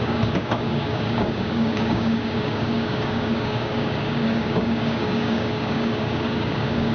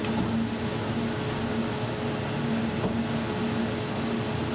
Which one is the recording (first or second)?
second